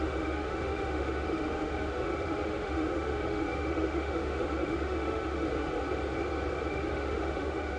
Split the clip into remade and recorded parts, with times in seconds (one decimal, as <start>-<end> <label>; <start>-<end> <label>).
0.0-5.8 remade; 5.8-6.7 recorded; 6.7-7.8 remade